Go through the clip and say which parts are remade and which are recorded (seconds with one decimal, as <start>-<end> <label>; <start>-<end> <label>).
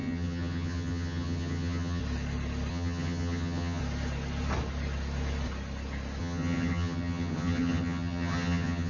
0.0-2.0 remade; 2.0-2.7 recorded; 2.7-3.8 remade; 3.8-6.2 recorded; 6.2-8.9 remade